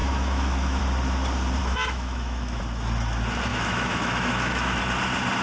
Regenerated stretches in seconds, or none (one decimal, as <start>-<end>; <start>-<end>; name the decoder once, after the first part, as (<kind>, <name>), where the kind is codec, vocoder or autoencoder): 0.0-0.8 (autoencoder, DAC-VAE); 1.6-2.6; 3.5-4.8